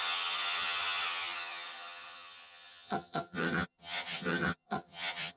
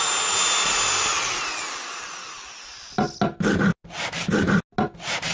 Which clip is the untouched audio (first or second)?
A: second